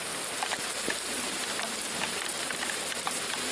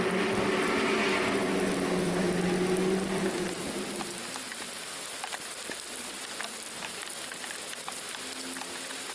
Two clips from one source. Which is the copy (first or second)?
first